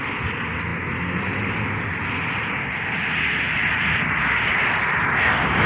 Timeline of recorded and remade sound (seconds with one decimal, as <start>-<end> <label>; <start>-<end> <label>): 0.0-5.7 recorded